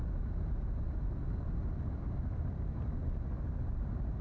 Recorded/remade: recorded